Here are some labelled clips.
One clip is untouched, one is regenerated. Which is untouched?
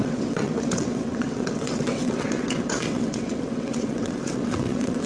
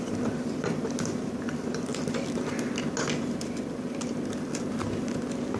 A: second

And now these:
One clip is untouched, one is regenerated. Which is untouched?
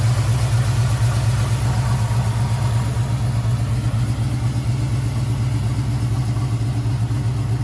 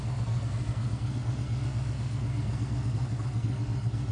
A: first